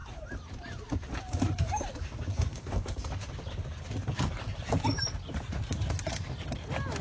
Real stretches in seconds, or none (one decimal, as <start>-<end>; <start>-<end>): 4.2-7.0